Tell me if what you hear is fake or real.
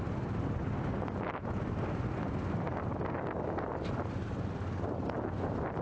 real